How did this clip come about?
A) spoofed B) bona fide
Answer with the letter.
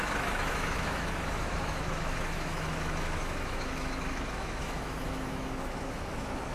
A